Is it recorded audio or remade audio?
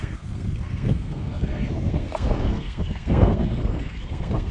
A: remade